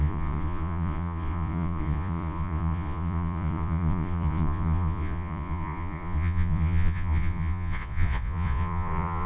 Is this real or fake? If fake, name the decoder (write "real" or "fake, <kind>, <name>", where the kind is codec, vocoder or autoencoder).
fake, vocoder, Vocos